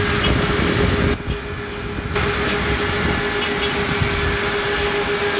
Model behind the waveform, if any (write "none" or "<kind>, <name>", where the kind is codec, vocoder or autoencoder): none